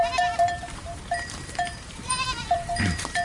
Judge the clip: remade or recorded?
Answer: remade